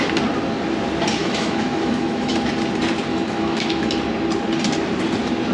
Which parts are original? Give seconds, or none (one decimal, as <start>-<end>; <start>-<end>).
0.0-1.2; 2.3-3.1; 3.9-5.5